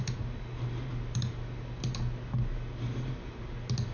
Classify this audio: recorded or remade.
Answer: recorded